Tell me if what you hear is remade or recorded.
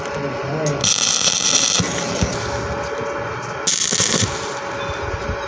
recorded